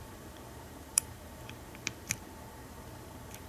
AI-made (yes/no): yes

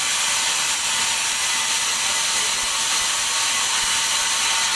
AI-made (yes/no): no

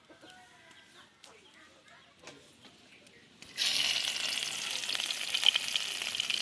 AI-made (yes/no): no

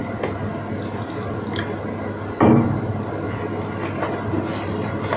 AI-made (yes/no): no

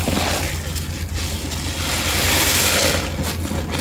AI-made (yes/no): no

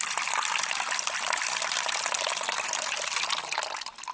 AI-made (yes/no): no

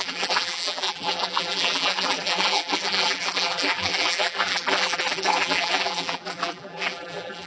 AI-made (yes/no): yes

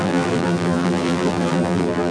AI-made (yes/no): yes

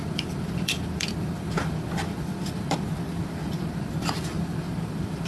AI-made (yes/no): yes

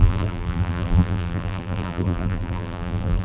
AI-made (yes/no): yes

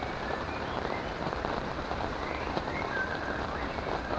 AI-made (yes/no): yes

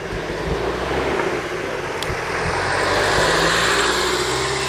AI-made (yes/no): no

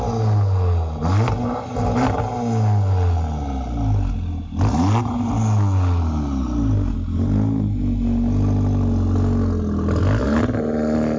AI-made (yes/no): no